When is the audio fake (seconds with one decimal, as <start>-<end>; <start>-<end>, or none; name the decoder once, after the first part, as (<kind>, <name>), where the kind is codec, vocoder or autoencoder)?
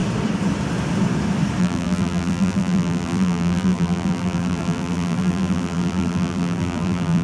1.6-7.2 (vocoder, BigVGAN v2)